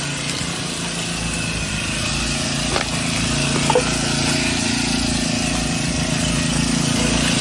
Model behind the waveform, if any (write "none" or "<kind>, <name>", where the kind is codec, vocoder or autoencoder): none